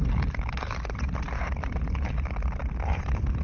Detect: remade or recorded recorded